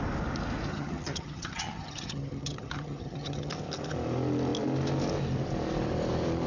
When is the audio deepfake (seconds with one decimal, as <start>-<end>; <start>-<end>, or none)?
0.7-3.5

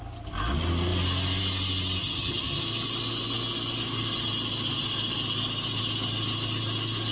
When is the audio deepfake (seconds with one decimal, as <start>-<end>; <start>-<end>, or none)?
2.0-2.6

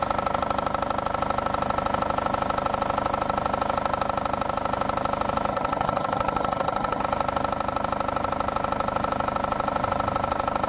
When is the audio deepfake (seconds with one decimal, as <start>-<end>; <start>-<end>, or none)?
5.5-7.0

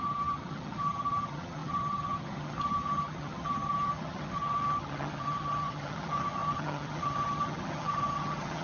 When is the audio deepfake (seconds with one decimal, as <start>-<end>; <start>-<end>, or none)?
0.0-8.6

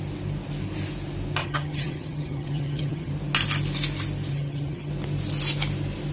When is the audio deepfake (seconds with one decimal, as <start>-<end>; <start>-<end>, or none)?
1.4-3.1; 4.3-4.9

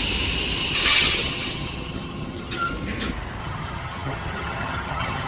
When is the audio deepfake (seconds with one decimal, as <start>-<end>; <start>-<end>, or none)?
0.6-2.7; 3.4-5.3

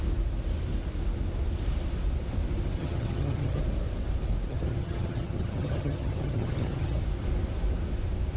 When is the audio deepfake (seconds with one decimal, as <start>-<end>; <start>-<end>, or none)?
2.8-3.6; 4.5-7.0

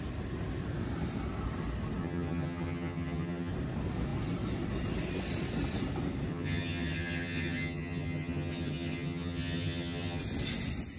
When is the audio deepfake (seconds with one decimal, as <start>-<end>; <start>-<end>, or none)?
2.0-3.5; 6.3-10.2